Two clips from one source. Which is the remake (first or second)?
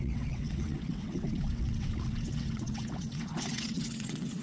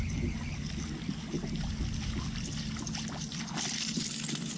first